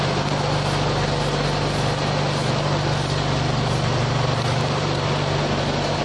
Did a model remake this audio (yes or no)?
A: no